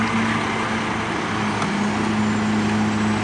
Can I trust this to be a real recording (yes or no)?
yes